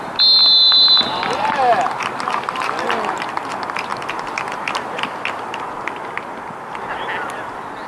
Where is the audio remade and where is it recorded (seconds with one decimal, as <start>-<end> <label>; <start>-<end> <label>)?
0.0-7.9 recorded